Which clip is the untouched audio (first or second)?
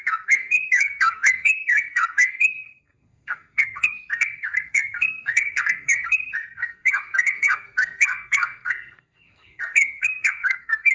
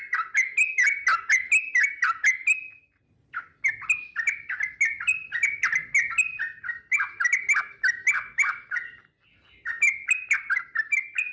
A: second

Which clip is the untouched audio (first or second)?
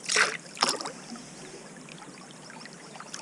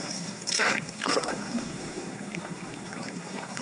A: first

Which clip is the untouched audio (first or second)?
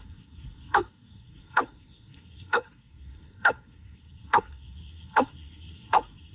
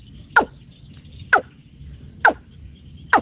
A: second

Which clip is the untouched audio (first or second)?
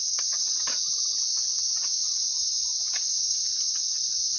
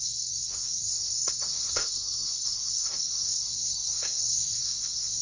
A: first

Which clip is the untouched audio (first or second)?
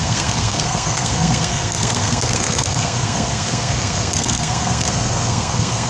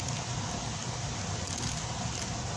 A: second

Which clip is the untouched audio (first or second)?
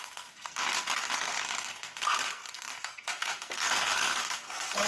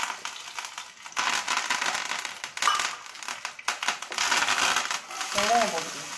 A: second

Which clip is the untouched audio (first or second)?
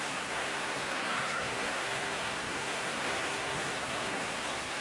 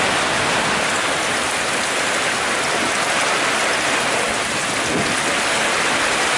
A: second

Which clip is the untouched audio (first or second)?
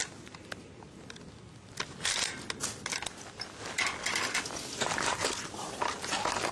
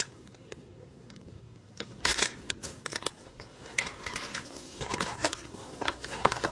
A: first